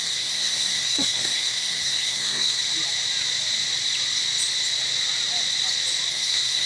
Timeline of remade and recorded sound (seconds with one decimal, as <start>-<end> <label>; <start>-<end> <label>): 0.0-2.6 remade; 2.6-6.1 recorded; 6.1-6.7 remade